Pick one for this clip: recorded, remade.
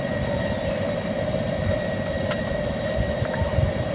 recorded